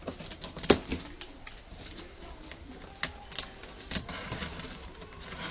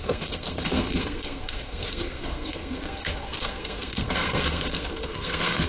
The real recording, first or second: first